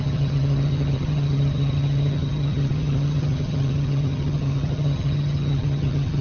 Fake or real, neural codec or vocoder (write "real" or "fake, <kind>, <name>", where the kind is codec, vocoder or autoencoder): fake, vocoder, HiFi-GAN